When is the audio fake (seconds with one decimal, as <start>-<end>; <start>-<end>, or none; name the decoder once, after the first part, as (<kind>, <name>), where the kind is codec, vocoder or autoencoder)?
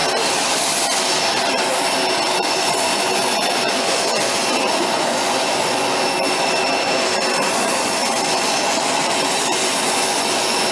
2.3-10.7 (vocoder, Vocos)